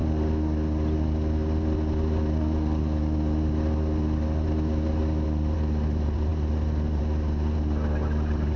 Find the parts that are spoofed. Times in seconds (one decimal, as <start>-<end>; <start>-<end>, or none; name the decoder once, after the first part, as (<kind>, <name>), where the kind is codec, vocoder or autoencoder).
none